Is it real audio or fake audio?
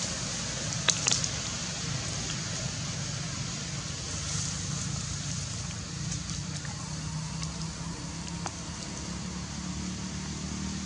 real